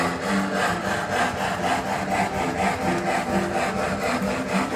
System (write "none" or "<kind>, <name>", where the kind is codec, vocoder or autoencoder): none